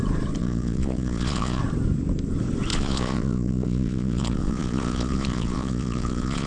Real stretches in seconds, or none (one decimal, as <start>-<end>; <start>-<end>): 0.0-0.4; 1.6-2.7